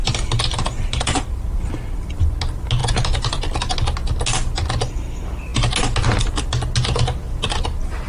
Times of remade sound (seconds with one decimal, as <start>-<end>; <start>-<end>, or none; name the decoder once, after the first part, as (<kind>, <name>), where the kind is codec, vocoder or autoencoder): 0.0-1.5 (vocoder, BigVGAN v2); 2.8-3.4